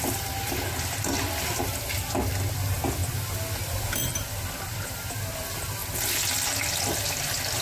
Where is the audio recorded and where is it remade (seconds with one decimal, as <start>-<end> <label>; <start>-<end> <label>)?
0.0-7.6 recorded